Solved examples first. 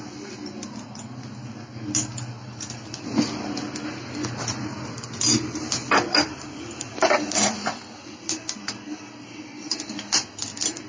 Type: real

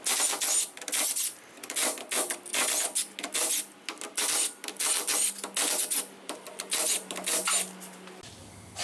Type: real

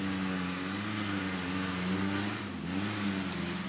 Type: real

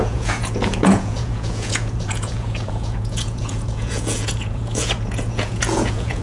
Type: fake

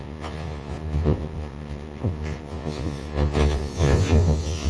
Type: fake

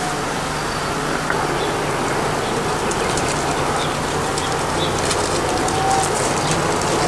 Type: real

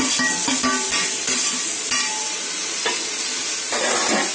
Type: real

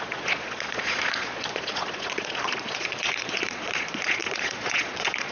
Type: fake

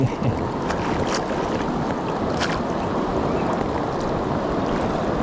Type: real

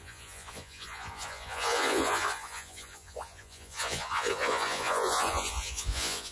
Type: fake